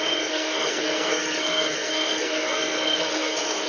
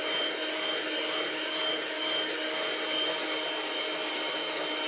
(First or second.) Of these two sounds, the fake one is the first